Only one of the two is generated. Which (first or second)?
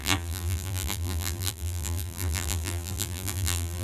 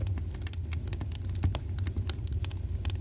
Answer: first